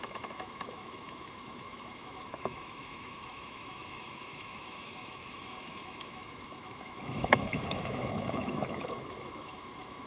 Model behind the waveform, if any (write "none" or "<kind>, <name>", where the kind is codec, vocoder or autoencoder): autoencoder, DAC-VAE